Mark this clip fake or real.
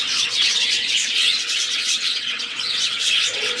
fake